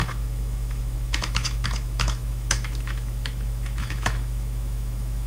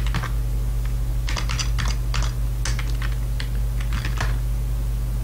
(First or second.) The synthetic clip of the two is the first